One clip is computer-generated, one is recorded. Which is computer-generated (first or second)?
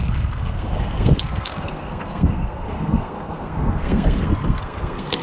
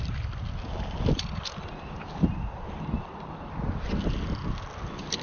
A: first